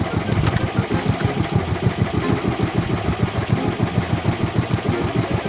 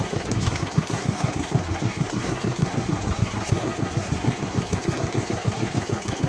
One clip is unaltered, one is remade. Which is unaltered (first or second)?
first